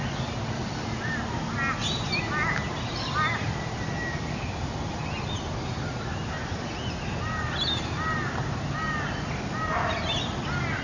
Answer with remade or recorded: recorded